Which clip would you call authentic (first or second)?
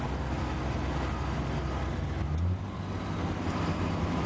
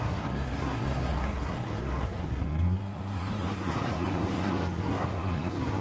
first